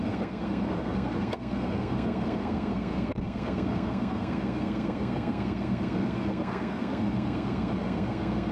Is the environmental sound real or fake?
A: fake